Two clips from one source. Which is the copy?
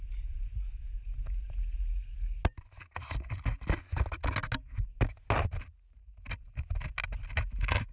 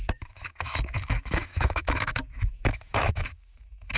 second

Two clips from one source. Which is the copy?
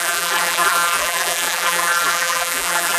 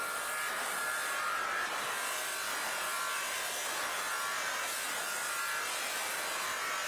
first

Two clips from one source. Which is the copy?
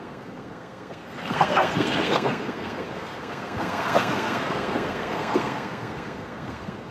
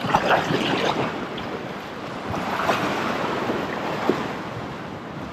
first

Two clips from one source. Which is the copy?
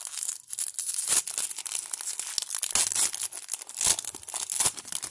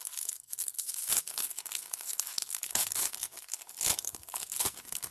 second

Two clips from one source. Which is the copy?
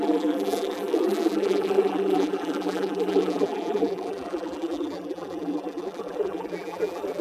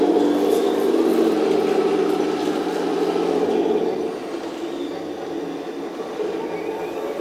first